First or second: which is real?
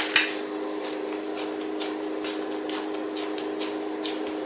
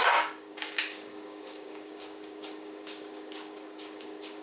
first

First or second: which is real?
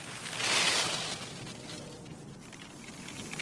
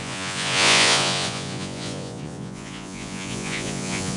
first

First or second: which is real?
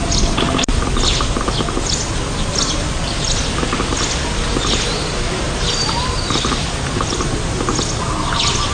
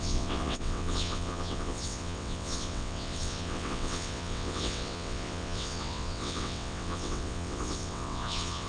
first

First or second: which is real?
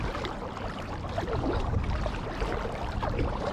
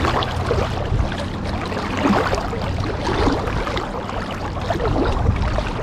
second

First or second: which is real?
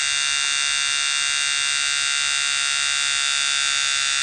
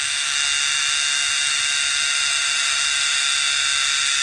first